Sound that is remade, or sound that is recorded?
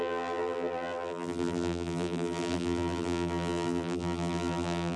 remade